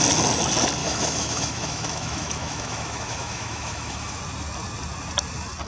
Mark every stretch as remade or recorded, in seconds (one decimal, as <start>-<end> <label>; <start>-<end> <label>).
0.0-0.8 recorded; 0.8-4.2 remade; 4.2-5.7 recorded

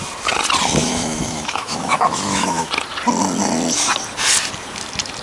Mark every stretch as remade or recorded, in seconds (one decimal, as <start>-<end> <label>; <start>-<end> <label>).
0.0-0.8 recorded; 0.8-2.7 remade; 2.7-5.2 recorded